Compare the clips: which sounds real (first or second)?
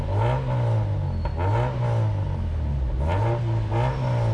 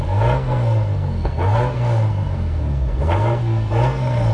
first